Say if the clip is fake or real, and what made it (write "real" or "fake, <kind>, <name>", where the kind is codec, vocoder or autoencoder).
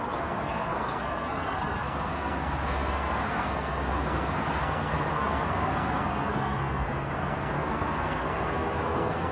fake, codec, SNAC